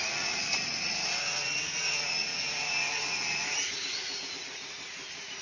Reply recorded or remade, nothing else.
remade